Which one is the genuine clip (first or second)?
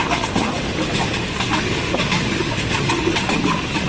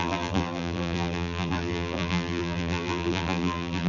first